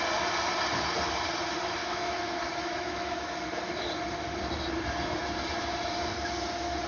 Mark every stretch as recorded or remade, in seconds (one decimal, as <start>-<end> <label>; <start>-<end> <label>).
0.0-1.8 recorded; 1.8-3.3 remade; 3.3-6.9 recorded